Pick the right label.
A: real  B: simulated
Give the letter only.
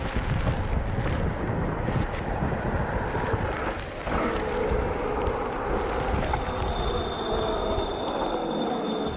A